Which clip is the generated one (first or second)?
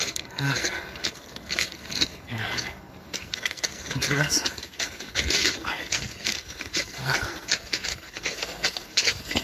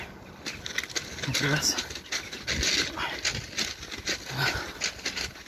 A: first